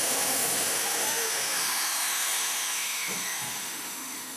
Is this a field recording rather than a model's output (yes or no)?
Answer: no